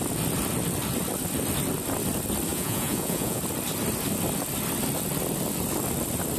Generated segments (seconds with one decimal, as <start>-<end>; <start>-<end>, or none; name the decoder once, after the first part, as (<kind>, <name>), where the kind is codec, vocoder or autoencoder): 2.5-3.4 (vocoder, Vocos)